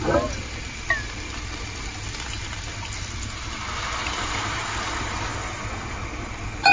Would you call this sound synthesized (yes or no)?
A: no